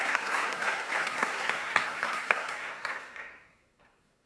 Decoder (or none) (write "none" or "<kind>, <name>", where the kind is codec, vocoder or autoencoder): codec, SNAC